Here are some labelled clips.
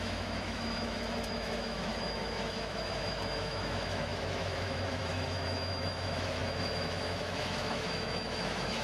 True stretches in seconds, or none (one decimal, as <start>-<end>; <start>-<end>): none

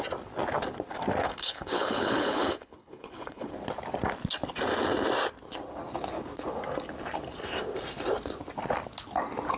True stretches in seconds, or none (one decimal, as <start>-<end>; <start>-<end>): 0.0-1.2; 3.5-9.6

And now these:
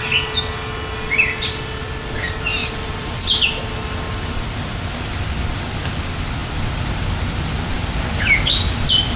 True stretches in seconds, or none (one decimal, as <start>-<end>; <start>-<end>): 0.0-2.6; 3.4-9.2

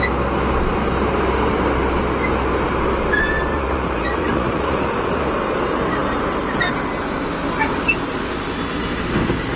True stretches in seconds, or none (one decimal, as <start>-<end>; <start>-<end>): 0.0-3.5; 5.3-9.6

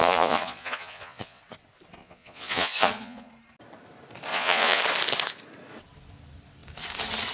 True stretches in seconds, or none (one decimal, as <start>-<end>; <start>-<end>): 1.4-2.0; 3.3-4.3; 4.8-7.3